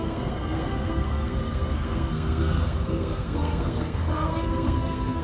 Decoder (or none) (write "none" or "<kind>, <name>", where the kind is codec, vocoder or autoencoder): codec, SNAC